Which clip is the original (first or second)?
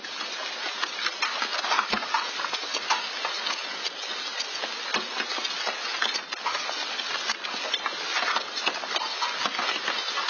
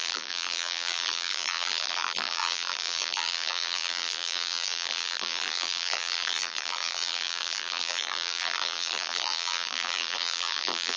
first